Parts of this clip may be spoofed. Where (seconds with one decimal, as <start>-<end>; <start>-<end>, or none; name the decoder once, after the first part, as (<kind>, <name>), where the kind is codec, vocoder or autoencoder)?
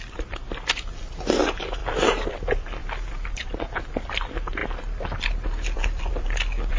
none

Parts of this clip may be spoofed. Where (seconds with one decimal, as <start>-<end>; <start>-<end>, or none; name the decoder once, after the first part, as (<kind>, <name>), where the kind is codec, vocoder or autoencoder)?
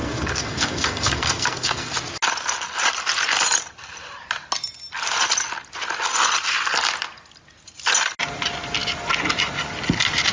0.0-1.9 (codec, SNAC)